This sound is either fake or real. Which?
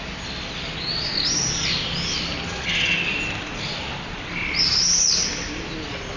real